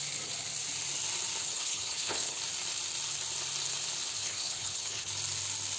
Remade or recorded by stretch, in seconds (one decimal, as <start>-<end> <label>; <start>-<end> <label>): 0.0-1.4 recorded; 1.4-2.4 remade; 2.4-4.2 recorded; 4.2-5.1 remade; 5.1-5.8 recorded